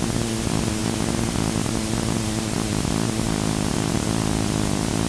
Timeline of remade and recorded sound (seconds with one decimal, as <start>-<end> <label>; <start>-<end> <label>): 0.0-5.1 recorded

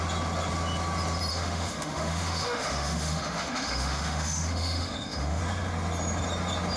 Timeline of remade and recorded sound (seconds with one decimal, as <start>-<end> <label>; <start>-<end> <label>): 0.0-1.3 recorded; 1.3-5.4 remade; 5.4-6.8 recorded

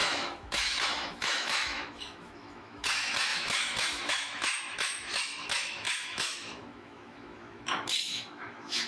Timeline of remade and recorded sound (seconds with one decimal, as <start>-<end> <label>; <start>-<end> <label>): 0.0-8.9 remade

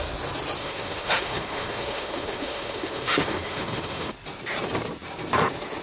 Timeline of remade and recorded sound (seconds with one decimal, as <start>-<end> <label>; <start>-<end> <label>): 0.0-0.6 recorded; 0.6-4.1 remade; 4.1-5.8 recorded